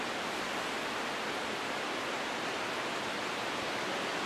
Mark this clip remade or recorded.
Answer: recorded